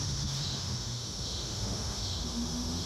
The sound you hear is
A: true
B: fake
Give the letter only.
B